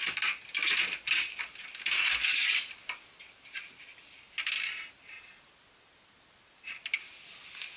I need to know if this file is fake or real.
real